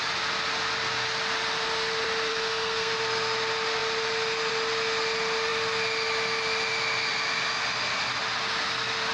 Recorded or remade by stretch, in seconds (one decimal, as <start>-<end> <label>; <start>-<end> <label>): 0.0-2.3 recorded; 2.3-2.9 remade; 2.9-9.1 recorded

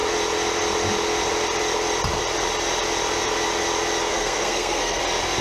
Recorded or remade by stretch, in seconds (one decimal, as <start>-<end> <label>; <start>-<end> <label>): 0.0-4.1 recorded; 4.1-5.0 remade; 5.0-5.4 recorded

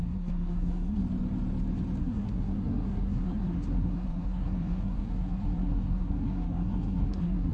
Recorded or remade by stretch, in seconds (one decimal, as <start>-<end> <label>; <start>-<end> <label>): 0.0-1.0 remade; 1.0-2.0 recorded; 2.0-7.5 remade

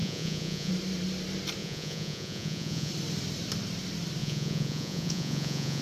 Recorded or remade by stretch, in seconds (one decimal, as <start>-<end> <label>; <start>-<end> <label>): 0.0-0.7 remade; 0.7-1.6 recorded; 1.6-2.9 remade; 2.9-4.2 recorded; 4.2-5.8 remade

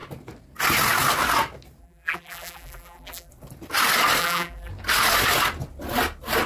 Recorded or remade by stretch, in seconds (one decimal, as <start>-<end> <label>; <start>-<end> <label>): 0.0-1.8 recorded; 1.8-3.3 remade; 3.3-4.2 recorded; 4.2-4.7 remade; 4.7-6.5 recorded

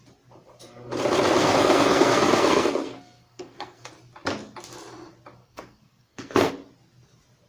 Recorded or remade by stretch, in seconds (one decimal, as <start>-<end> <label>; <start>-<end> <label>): 0.0-1.4 recorded; 1.4-3.9 remade; 3.9-5.4 recorded; 5.4-6.5 remade; 6.5-7.5 recorded

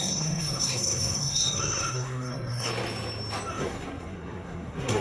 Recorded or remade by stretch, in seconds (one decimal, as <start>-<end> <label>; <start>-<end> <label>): 0.0-2.7 remade; 2.7-3.5 recorded; 3.5-5.0 remade